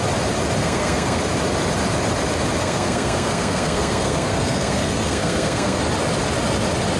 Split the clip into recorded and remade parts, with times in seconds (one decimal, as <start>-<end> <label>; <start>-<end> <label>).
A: 0.0-0.6 recorded; 0.6-1.2 remade; 1.2-2.6 recorded; 2.6-5.8 remade; 5.8-7.0 recorded